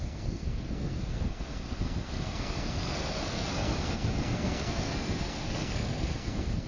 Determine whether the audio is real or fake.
fake